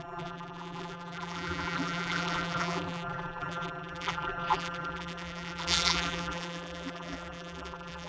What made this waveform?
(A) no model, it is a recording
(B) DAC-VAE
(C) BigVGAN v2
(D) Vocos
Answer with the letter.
C